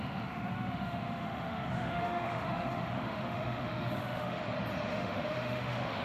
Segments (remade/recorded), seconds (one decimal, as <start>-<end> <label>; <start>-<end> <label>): 0.0-4.4 remade; 4.4-4.9 recorded; 4.9-6.0 remade